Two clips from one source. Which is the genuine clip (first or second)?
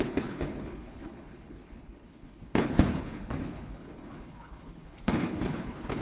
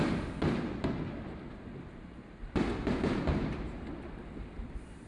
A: second